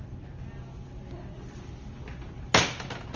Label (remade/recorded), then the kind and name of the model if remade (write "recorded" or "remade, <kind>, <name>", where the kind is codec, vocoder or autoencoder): recorded